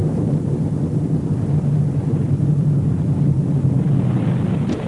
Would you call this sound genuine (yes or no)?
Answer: no